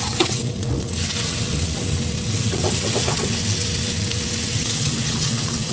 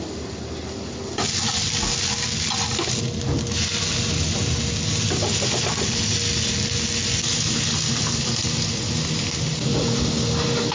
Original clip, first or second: second